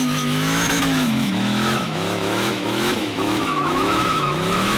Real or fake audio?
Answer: fake